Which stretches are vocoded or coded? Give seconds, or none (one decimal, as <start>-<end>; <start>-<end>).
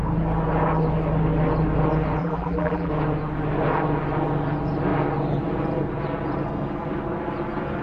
2.2-2.9